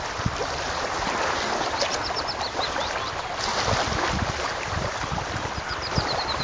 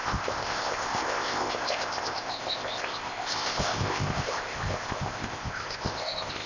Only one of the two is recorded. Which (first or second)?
first